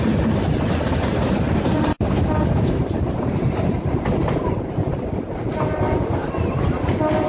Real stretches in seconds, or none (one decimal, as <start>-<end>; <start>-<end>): none